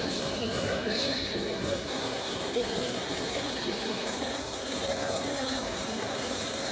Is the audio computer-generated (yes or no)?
yes